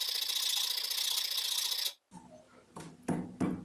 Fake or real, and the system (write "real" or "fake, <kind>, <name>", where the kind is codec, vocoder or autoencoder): real